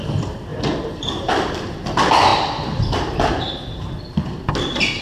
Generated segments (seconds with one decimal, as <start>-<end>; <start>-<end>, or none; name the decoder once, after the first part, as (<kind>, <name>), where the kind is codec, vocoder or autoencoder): 0.5-1.0 (vocoder, BigVGAN v2); 2.3-4.5